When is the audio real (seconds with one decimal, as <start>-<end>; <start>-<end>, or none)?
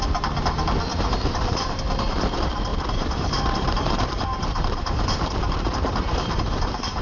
0.0-0.9; 1.9-2.7